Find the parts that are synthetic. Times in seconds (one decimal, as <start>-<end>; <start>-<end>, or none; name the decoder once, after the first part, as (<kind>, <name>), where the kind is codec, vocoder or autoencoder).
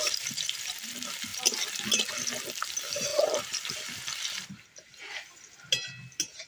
none